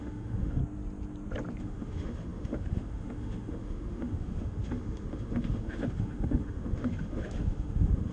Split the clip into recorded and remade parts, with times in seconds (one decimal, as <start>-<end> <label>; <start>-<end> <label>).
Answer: 0.0-0.6 remade; 0.6-1.6 recorded; 1.6-8.1 remade